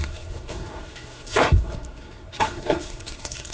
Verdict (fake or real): fake